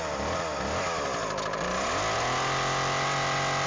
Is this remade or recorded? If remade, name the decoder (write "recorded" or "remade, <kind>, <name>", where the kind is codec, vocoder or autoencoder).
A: recorded